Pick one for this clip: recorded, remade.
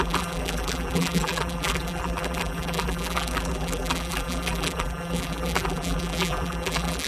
remade